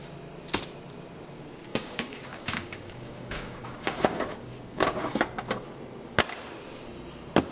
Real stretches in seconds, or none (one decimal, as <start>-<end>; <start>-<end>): 0.0-1.7; 5.2-7.5